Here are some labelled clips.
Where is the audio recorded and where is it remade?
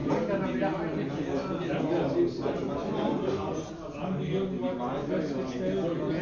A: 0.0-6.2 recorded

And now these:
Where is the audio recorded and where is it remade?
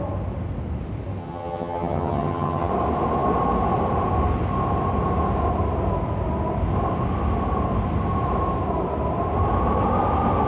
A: 0.0-1.2 recorded; 1.2-2.7 remade; 2.7-10.5 recorded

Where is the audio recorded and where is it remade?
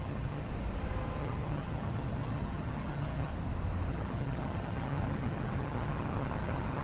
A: 0.0-0.5 remade; 0.5-1.2 recorded; 1.2-3.3 remade; 3.3-3.9 recorded; 3.9-6.8 remade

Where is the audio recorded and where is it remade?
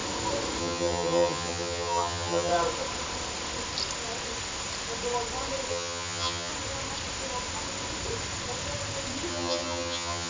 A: 0.0-0.6 recorded; 0.6-2.5 remade; 2.5-5.7 recorded; 5.7-6.5 remade; 6.5-9.3 recorded; 9.3-10.3 remade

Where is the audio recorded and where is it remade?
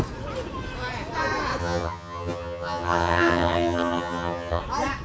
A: 0.0-1.6 recorded; 1.6-4.6 remade; 4.6-5.0 recorded